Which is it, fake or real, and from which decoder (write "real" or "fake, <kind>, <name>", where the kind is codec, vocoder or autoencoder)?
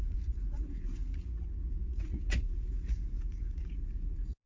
fake, vocoder, Vocos